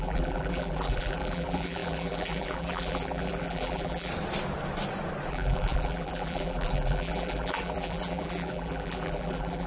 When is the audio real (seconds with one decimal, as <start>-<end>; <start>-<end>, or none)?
4.1-5.3